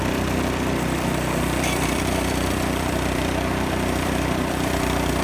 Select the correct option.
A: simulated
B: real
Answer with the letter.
A